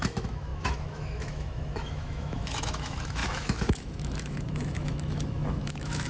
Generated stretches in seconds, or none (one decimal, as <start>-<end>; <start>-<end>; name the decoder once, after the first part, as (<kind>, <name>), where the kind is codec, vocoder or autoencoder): 0.0-6.1 (autoencoder, DAC-VAE)